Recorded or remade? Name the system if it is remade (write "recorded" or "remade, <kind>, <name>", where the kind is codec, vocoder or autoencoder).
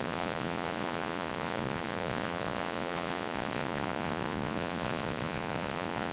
remade, vocoder, Vocos